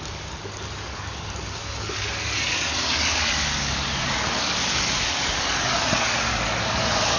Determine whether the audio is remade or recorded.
remade